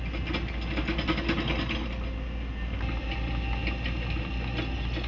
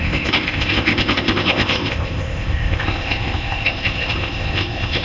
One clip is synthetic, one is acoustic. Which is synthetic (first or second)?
second